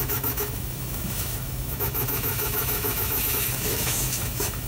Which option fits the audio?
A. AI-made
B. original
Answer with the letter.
A